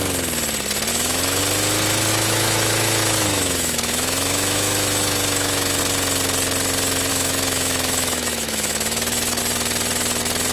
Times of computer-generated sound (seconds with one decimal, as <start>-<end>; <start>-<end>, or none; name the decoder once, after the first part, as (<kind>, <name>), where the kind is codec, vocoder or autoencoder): 0.9-1.4 (autoencoder, DAC-VAE); 2.1-5.8; 7.1-9.4